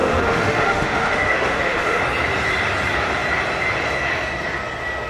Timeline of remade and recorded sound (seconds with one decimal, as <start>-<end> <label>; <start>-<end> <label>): 0.0-2.0 remade; 2.0-5.1 recorded